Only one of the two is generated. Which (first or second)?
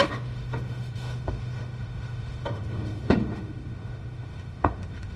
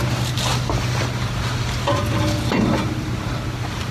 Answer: first